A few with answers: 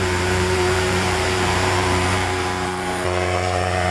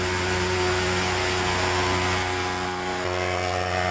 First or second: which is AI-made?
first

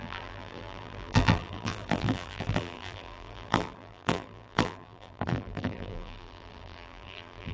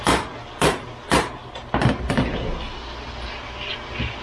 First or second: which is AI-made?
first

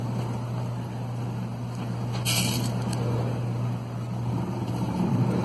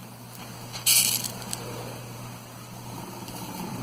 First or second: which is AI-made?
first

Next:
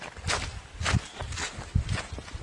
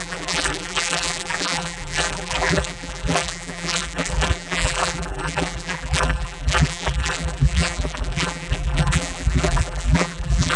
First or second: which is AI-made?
second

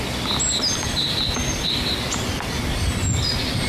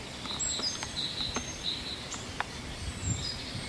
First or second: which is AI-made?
second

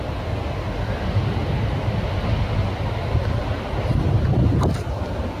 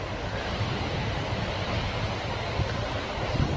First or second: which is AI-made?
second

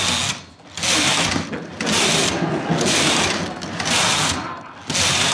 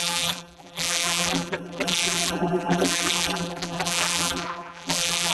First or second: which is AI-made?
second